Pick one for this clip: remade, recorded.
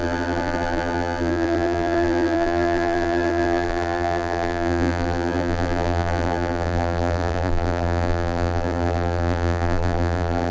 remade